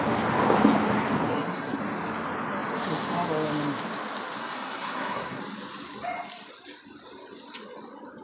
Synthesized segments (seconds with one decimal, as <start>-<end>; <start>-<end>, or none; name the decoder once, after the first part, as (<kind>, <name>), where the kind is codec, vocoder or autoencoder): 1.3-1.8 (codec, SNAC); 4.4-5.4